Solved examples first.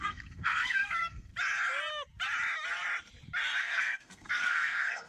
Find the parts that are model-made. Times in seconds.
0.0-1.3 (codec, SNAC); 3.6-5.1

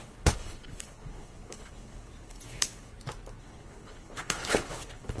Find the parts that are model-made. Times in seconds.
0.0-2.9 (codec, HILCodec); 3.4-5.2

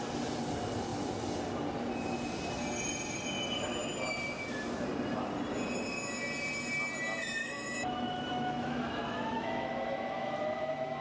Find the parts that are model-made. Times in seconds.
7.4-11.0 (autoencoder, DAC-VAE)

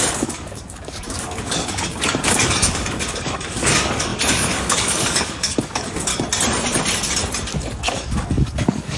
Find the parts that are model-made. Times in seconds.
0.0-6.1 (codec, DAC); 7.8-9.0